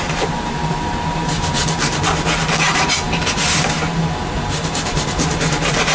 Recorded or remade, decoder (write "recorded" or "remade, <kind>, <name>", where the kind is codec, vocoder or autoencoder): remade, vocoder, BigVGAN v2